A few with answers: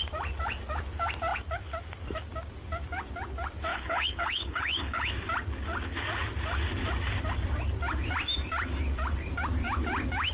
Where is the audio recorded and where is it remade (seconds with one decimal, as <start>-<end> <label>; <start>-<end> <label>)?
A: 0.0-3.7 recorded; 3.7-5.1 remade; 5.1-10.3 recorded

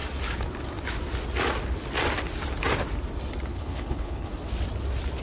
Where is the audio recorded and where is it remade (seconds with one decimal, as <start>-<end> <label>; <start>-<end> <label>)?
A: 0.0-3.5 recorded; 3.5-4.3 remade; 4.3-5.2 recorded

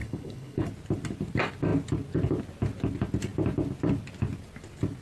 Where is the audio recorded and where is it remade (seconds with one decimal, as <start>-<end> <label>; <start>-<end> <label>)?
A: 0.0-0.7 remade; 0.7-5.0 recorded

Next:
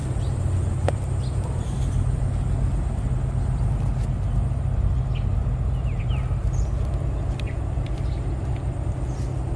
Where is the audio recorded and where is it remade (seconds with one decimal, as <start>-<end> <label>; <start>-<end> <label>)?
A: 0.0-9.6 recorded

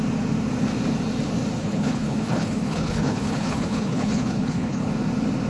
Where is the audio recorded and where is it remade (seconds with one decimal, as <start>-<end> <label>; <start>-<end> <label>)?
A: 0.0-1.6 recorded; 1.6-4.9 remade; 4.9-5.5 recorded